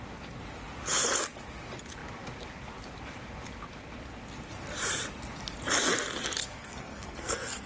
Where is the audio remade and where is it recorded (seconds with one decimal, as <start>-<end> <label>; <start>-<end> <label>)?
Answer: 0.0-6.4 recorded; 6.4-7.7 remade